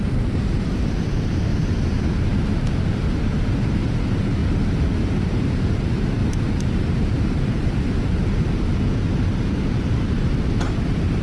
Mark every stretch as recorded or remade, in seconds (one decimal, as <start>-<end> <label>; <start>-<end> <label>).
0.0-1.5 remade; 1.5-2.2 recorded; 2.2-4.4 remade; 4.4-5.0 recorded; 5.0-6.2 remade; 6.2-7.1 recorded; 7.1-11.2 remade